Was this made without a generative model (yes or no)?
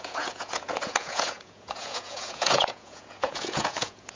no